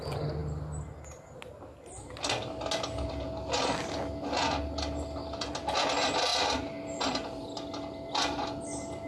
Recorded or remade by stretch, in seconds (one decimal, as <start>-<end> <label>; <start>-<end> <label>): 0.0-9.1 recorded